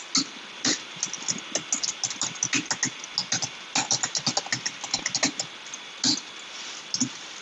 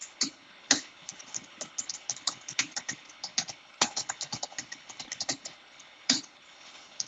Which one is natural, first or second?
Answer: first